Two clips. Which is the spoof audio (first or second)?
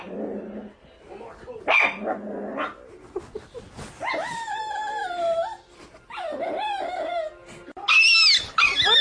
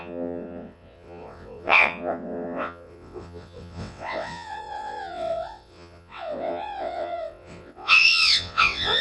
second